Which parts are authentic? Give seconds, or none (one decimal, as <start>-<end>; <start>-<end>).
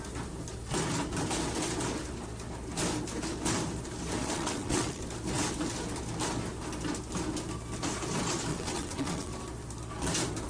0.0-4.2; 5.0-8.5; 9.3-10.5